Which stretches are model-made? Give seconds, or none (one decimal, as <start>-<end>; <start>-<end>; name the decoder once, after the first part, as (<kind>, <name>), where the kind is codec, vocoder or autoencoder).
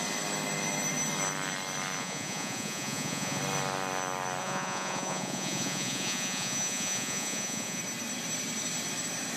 2.0-3.4 (vocoder, Vocos); 4.4-7.8